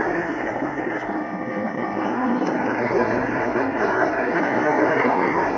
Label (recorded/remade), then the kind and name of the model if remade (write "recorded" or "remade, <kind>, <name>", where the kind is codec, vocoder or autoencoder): remade, codec, SNAC